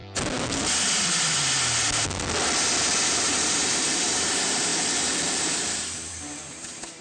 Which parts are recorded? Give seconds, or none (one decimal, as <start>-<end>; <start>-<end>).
0.0-3.1; 4.7-5.4

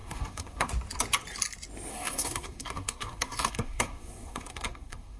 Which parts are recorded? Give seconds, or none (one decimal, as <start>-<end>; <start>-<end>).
0.7-1.9

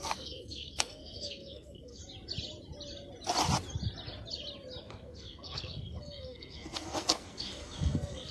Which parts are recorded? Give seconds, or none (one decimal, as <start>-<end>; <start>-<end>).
2.0-4.8

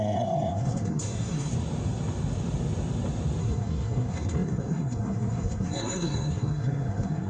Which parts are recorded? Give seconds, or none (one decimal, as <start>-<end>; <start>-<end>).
1.5-3.4